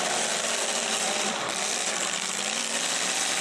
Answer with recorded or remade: remade